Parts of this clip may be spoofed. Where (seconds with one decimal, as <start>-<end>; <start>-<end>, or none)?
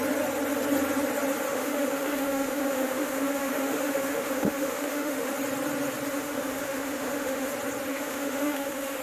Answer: 1.5-5.3; 6.1-7.5; 7.9-9.0